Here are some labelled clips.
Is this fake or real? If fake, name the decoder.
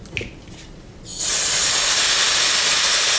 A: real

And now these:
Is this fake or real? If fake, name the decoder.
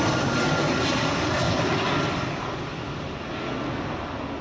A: real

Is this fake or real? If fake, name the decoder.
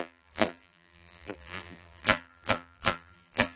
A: fake, vocoder, BigVGAN v2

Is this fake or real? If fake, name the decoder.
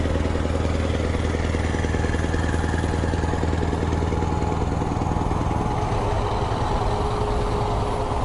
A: real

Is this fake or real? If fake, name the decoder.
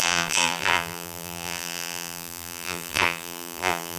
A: fake, vocoder, BigVGAN v2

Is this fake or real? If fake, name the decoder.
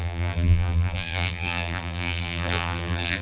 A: fake, vocoder, BigVGAN v2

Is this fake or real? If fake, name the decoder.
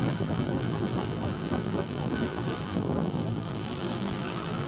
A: fake, vocoder, BigVGAN v2